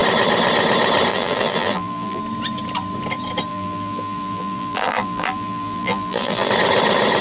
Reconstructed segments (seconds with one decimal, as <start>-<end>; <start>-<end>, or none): 1.1-2.2; 3.5-6.5